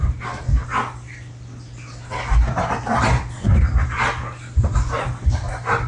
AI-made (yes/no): no